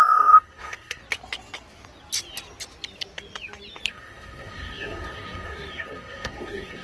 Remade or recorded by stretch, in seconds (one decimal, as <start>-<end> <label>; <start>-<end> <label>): 0.0-1.0 remade; 1.0-3.9 recorded; 3.9-6.8 remade